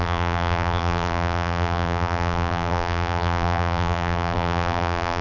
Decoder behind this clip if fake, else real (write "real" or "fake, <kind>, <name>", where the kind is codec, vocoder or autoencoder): fake, vocoder, BigVGAN v2